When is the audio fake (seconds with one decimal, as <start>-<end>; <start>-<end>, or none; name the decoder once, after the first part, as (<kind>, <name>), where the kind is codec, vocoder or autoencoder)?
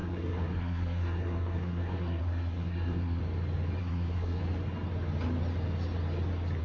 0.0-3.2 (codec, SNAC); 3.8-4.4